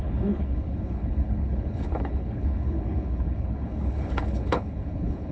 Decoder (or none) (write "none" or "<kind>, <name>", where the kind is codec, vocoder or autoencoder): codec, HILCodec